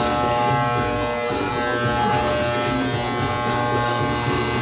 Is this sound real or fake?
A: real